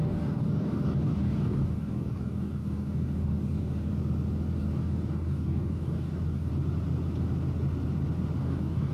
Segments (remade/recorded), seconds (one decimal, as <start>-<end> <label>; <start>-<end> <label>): 0.0-3.9 remade; 3.9-4.6 recorded; 4.6-6.5 remade; 6.5-8.4 recorded; 8.4-8.9 remade